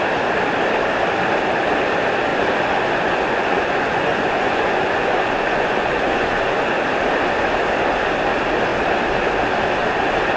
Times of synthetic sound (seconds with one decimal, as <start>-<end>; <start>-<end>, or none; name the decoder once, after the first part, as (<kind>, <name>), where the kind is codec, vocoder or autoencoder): 2.3-6.8 (vocoder, Vocos)